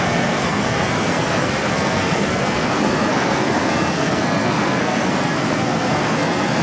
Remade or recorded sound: remade